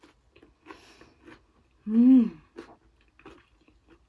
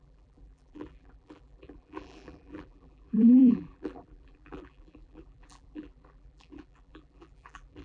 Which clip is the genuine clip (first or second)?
first